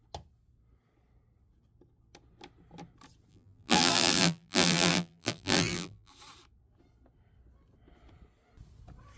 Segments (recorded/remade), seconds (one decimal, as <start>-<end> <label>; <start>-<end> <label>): 0.0-3.3 recorded; 3.3-6.1 remade; 6.1-9.2 recorded